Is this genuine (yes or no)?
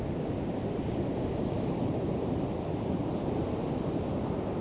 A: yes